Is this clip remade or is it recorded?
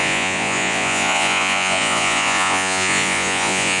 remade